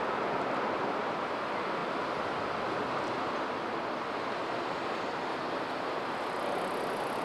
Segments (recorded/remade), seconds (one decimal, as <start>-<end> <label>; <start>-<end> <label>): 0.0-7.2 recorded